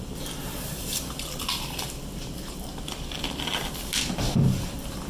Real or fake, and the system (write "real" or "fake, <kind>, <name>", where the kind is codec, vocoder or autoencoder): fake, vocoder, BigVGAN v2